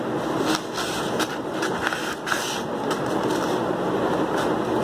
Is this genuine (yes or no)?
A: yes